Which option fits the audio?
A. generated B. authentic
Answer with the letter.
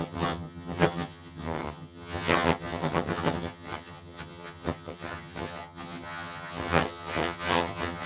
A